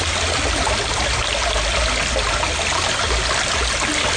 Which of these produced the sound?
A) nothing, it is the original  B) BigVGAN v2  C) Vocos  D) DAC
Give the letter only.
A